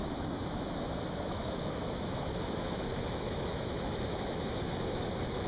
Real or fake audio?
fake